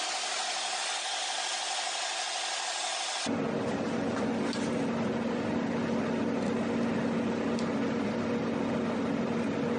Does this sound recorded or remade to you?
recorded